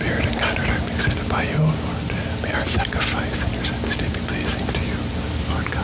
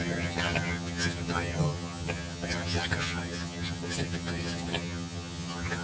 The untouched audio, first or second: first